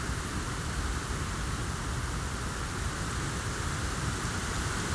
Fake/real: real